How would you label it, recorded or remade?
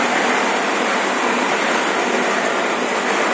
recorded